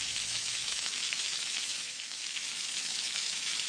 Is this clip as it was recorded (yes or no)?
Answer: no